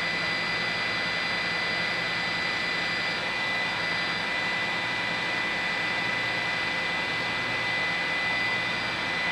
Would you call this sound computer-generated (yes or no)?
no